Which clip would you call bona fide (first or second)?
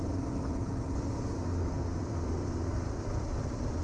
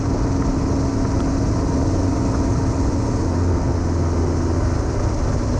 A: second